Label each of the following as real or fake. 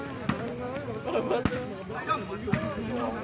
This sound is real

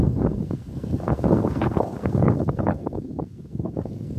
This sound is fake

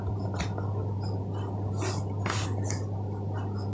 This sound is real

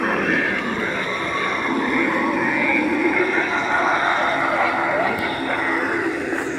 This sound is real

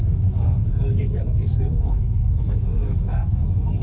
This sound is fake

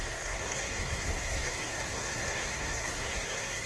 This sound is fake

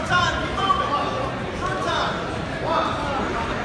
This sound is real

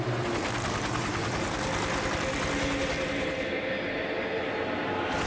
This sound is real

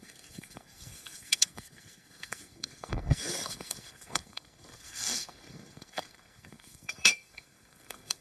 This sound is fake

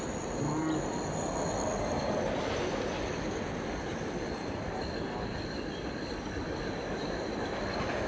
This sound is real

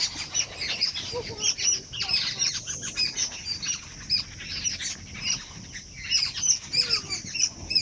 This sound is real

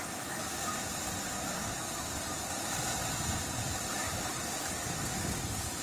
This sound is real